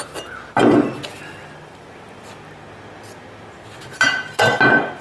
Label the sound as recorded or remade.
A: recorded